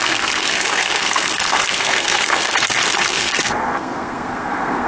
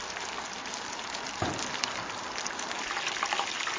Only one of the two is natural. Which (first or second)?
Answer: second